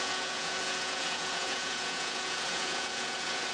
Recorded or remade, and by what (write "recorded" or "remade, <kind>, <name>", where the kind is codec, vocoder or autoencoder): remade, vocoder, Vocos